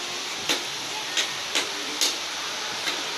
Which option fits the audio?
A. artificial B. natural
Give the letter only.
B